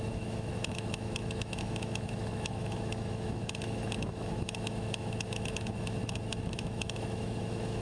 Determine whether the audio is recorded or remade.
remade